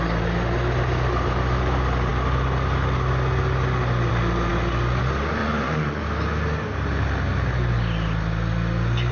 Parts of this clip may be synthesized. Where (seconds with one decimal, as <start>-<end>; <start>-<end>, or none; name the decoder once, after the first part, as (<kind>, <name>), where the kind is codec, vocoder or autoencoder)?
5.4-6.0 (vocoder, Vocos)